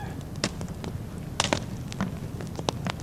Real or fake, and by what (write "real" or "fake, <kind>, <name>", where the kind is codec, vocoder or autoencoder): real